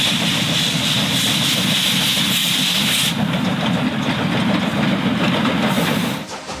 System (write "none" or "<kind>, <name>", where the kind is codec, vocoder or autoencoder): none